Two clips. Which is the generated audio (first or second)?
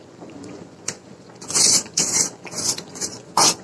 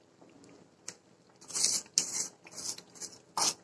first